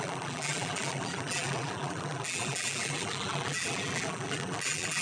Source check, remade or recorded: remade